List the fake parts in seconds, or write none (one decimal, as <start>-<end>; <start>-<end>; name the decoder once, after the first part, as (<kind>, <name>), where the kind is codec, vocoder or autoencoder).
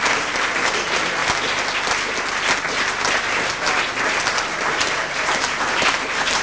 0.0-1.2 (vocoder, BigVGAN v2); 3.9-6.4